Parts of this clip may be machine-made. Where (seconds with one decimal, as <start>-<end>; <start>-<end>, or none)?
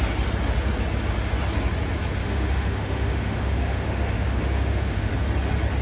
2.2-5.1